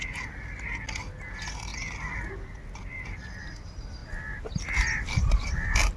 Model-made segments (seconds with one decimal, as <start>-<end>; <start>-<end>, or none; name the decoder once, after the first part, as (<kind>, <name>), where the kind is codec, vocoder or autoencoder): none